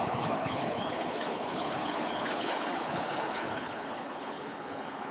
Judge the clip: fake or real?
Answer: fake